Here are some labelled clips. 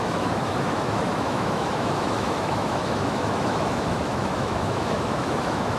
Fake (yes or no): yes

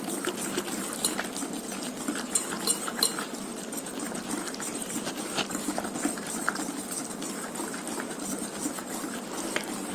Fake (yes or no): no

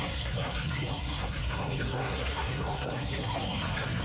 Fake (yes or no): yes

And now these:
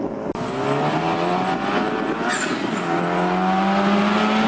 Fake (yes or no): no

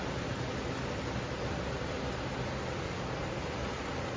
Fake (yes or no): no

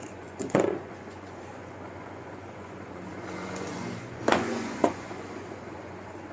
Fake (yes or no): yes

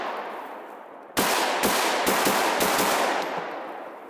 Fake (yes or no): no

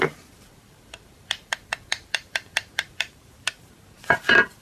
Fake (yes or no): yes